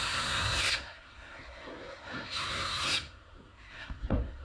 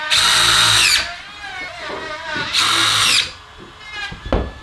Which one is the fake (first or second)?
first